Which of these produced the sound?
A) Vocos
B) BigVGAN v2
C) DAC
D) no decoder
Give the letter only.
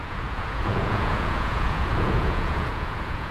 A